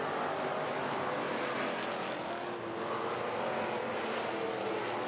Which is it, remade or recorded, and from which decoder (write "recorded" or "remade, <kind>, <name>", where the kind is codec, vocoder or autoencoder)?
recorded